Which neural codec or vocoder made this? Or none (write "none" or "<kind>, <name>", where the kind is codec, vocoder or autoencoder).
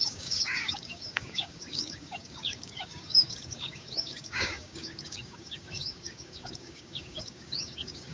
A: codec, DAC